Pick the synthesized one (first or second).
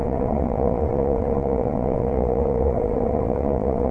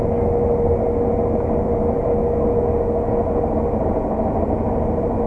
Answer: first